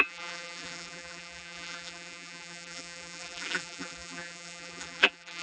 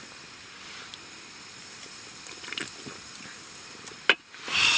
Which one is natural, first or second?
second